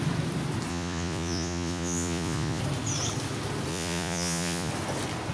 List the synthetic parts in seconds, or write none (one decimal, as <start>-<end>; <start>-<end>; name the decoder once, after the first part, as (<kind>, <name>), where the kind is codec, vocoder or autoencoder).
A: 0.7-2.6 (vocoder, Vocos); 3.7-4.7

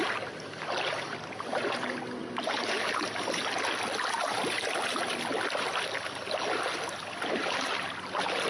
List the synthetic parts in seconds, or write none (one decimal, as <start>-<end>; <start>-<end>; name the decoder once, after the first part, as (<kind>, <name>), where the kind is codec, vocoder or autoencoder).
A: 2.2-3.2 (vocoder, BigVGAN v2)

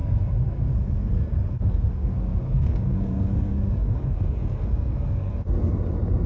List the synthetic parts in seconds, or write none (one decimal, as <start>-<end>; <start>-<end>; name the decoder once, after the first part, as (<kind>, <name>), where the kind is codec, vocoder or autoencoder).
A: 0.0-1.1 (codec, SNAC); 1.5-5.3